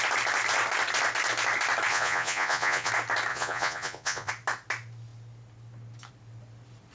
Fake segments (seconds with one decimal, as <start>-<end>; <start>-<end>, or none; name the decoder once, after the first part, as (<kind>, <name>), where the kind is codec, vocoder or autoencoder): 1.9-2.9 (vocoder, Vocos); 3.3-4.3